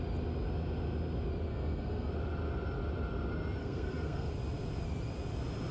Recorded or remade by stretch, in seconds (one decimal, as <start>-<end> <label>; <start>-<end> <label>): 0.0-1.5 recorded; 1.5-2.1 remade; 2.1-3.6 recorded; 3.6-4.3 remade; 4.3-5.7 recorded